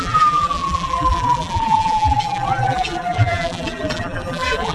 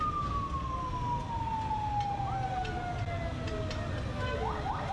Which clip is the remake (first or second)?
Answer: first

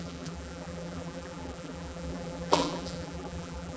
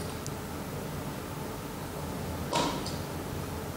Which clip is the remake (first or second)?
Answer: first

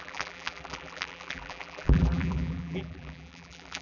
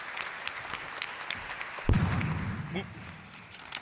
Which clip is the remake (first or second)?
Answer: first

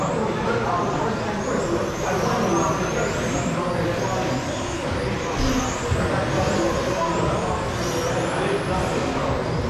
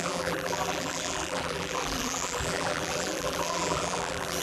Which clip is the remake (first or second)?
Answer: second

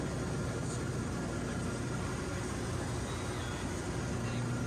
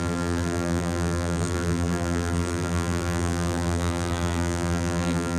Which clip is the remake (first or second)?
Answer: second